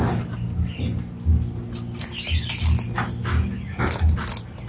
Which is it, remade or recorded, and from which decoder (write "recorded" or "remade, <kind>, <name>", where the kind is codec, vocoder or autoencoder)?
recorded